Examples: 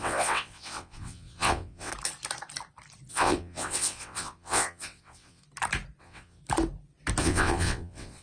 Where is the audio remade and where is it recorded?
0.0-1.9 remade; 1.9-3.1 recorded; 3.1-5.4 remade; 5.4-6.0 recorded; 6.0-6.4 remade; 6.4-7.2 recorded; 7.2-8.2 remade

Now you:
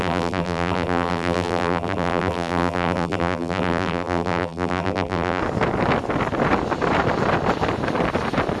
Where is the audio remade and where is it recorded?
0.0-5.4 remade; 5.4-8.6 recorded

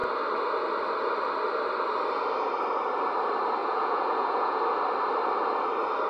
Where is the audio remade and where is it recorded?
0.0-3.6 recorded; 3.6-4.6 remade; 4.6-6.1 recorded

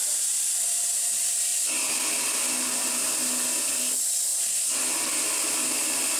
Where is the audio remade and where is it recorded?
0.0-6.2 recorded

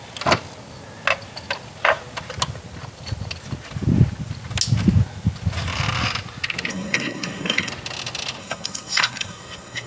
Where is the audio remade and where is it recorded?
0.0-6.7 recorded; 6.7-7.7 remade; 7.7-8.4 recorded; 8.4-9.9 remade

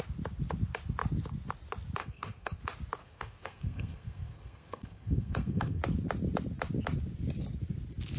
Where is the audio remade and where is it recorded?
0.0-2.0 recorded; 2.0-2.6 remade; 2.6-3.0 recorded; 3.0-5.8 remade; 5.8-8.2 recorded